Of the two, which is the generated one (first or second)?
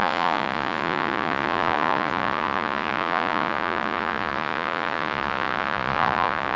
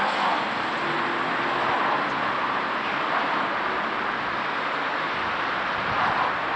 first